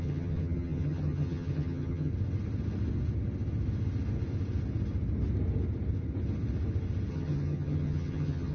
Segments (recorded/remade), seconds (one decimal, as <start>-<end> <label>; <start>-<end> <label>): 0.0-2.1 remade; 2.1-7.1 recorded; 7.1-8.5 remade